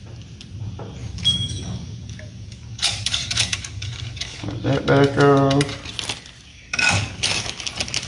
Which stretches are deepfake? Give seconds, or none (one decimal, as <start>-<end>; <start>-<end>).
1.0-4.5; 6.5-7.6